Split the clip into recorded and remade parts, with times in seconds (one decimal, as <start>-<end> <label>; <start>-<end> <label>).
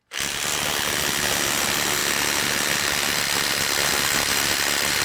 0.0-5.0 recorded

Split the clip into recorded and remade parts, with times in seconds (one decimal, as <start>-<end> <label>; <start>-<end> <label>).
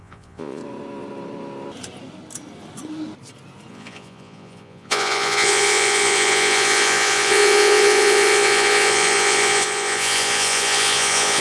0.0-0.6 remade; 0.6-3.7 recorded; 3.7-11.4 remade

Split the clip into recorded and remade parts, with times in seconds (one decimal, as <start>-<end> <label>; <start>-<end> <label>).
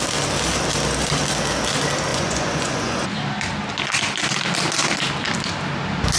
0.0-2.1 recorded; 2.1-3.1 remade; 3.1-6.2 recorded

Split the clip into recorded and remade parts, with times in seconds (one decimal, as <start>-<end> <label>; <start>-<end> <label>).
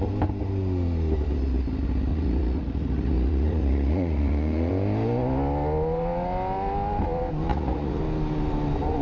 0.0-2.1 recorded; 2.1-4.7 remade; 4.7-7.5 recorded; 7.5-8.0 remade; 8.0-9.0 recorded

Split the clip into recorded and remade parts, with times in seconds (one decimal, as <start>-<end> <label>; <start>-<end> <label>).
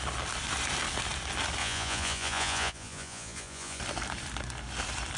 0.0-1.6 recorded; 1.6-3.8 remade; 3.8-5.2 recorded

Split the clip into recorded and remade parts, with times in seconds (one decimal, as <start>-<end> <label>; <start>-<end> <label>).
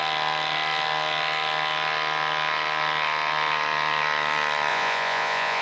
0.0-4.7 recorded; 4.7-5.6 remade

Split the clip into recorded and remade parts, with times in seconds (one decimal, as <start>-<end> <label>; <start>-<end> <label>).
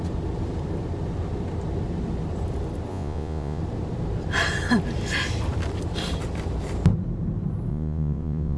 0.0-2.9 recorded; 2.9-3.6 remade; 3.6-7.7 recorded; 7.7-8.6 remade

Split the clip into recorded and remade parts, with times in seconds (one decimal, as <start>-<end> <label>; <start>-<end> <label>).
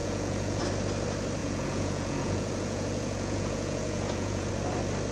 0.0-0.6 remade; 0.6-1.4 recorded; 1.4-4.5 remade; 4.5-5.1 recorded